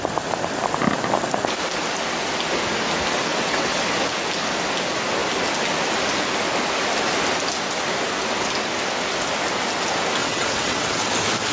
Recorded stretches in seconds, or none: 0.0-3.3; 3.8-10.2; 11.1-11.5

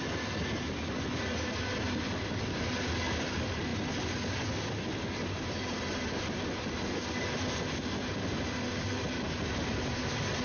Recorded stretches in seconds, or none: 0.0-10.4

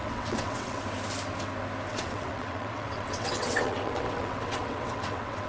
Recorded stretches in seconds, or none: 0.8-1.9

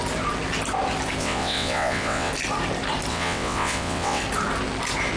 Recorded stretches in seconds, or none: 0.0-1.2; 2.3-3.1; 4.2-5.2

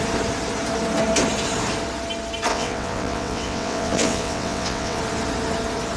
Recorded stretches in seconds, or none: 0.0-2.5; 5.0-6.0